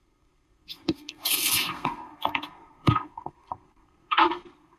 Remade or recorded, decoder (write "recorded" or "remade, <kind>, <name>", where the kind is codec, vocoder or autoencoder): remade, codec, SNAC